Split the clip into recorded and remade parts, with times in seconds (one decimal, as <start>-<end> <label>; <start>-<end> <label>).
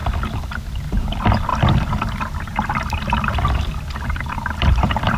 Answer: 0.0-0.7 recorded; 0.7-1.5 remade; 1.5-4.6 recorded; 4.6-5.2 remade